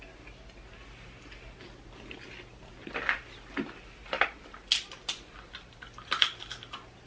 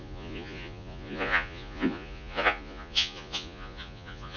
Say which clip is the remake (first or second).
second